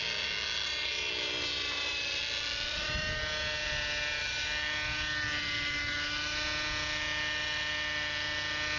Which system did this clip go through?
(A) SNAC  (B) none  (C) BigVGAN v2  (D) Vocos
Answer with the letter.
B